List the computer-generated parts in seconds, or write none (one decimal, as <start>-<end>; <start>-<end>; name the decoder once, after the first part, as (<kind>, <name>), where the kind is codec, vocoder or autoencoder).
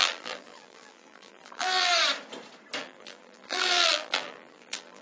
0.0-1.9 (vocoder, BigVGAN v2); 2.8-5.0